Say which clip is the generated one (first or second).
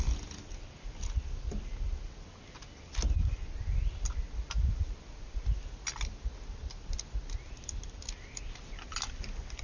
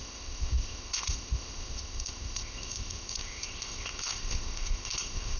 second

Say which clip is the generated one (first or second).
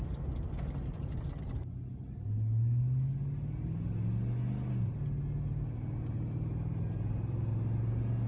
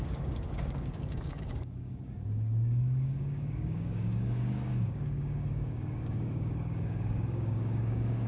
second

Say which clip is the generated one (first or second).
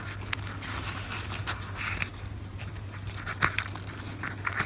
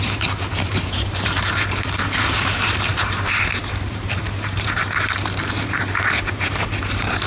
second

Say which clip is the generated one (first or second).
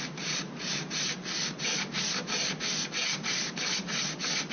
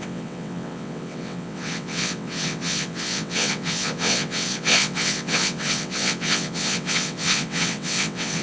second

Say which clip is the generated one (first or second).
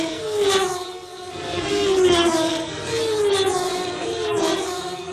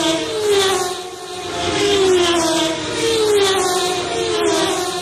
first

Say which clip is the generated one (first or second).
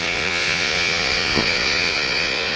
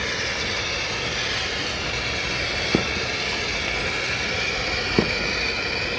first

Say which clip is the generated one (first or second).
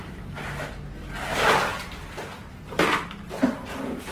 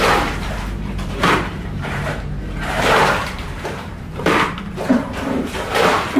second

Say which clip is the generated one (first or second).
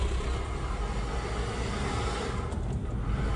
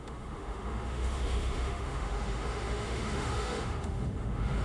second